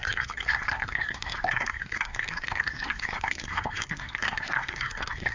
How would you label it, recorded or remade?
remade